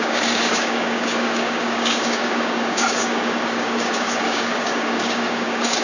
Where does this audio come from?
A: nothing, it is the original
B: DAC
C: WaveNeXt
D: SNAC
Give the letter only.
B